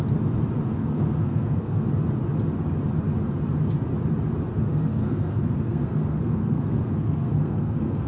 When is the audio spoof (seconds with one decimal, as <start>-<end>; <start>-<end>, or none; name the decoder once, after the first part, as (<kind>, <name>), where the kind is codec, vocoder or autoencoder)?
0.7-1.9 (codec, SNAC); 4.5-8.1

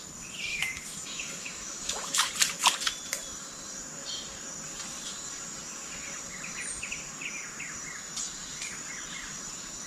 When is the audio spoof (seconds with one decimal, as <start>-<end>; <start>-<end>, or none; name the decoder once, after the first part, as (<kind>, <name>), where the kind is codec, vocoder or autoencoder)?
0.5-2.3 (autoencoder, DAC-VAE)